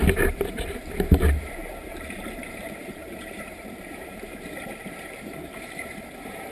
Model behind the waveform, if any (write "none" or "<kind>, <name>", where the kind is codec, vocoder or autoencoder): vocoder, BigVGAN v2